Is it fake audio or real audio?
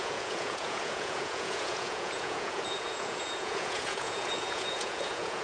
fake